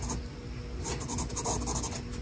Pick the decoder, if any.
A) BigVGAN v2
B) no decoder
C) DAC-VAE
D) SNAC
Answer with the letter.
B